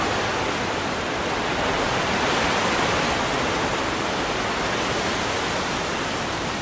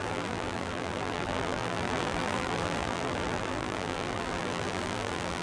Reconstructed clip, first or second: second